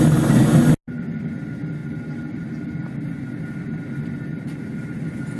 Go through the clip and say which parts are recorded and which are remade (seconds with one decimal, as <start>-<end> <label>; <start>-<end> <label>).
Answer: 0.0-1.8 recorded; 1.8-2.9 remade; 2.9-4.3 recorded; 4.3-5.0 remade; 5.0-5.4 recorded